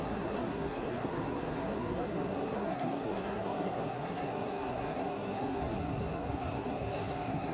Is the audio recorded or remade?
remade